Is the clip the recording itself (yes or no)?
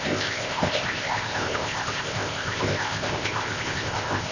no